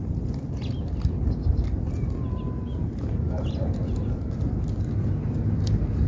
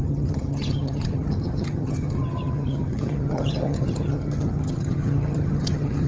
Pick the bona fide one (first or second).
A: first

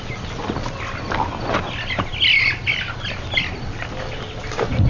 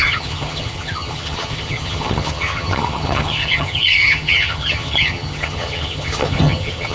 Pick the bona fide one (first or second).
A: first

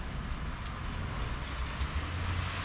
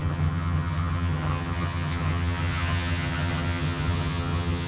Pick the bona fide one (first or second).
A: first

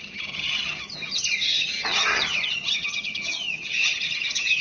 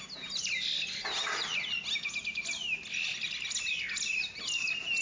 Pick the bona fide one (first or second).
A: second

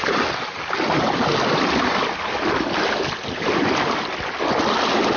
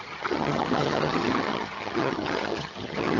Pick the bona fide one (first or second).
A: first